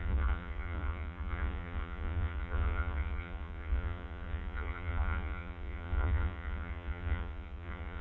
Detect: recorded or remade remade